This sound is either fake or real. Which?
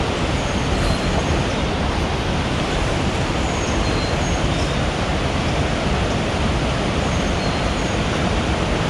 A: real